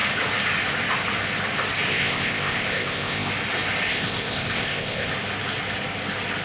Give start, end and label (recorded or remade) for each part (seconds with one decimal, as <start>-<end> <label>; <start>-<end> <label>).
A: 0.0-1.9 recorded; 1.9-3.3 remade; 3.3-3.9 recorded; 3.9-5.1 remade; 5.1-6.4 recorded